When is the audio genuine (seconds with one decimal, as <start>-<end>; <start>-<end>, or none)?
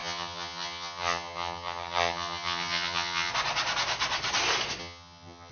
3.3-4.8